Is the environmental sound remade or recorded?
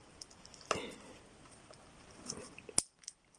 recorded